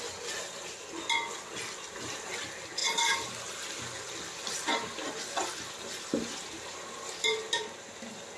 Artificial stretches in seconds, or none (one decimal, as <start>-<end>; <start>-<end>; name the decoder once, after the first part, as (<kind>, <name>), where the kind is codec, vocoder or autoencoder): 2.8-6.6 (vocoder, BigVGAN v2)